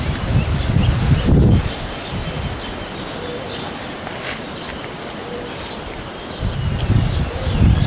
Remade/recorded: recorded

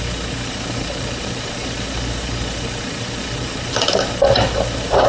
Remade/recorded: remade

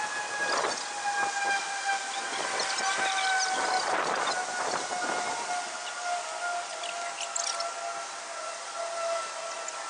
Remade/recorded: recorded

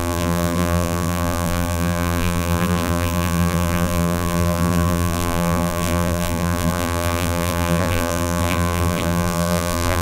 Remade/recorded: remade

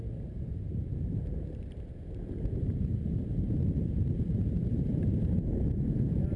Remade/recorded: remade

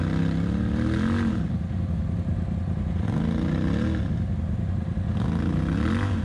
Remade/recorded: recorded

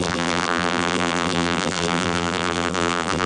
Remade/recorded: remade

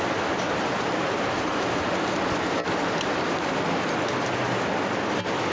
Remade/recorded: recorded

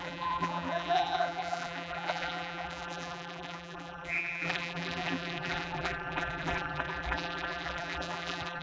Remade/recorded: remade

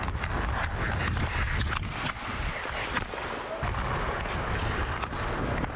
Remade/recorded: recorded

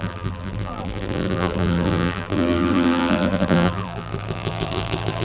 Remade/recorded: remade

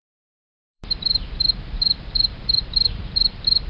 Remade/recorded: remade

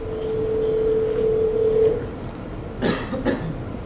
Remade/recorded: recorded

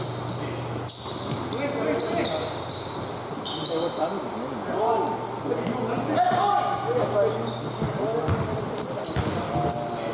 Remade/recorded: recorded